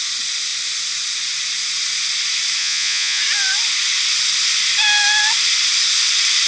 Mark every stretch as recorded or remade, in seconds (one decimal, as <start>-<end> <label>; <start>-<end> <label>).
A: 0.0-2.6 recorded; 2.6-3.2 remade; 3.2-6.5 recorded